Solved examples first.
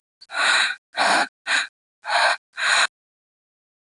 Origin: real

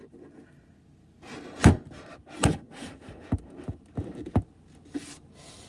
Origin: real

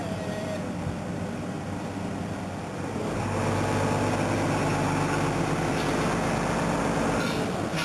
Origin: real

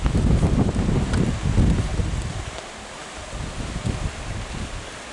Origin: real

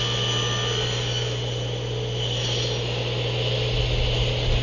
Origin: real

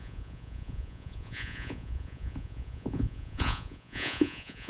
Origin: fake